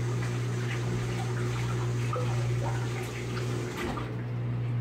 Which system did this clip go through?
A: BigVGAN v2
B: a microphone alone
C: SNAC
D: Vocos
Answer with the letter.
B